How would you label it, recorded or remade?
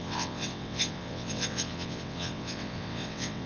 remade